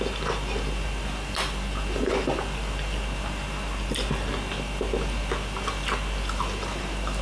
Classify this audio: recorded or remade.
recorded